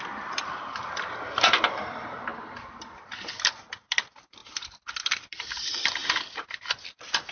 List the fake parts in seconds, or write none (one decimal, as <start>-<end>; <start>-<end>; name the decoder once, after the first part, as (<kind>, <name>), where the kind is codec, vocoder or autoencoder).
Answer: 0.0-2.3 (vocoder, BigVGAN v2); 3.7-4.4; 5.1-6.0; 6.7-7.3